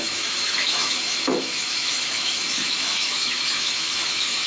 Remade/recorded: remade